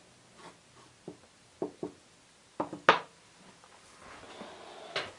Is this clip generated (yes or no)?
no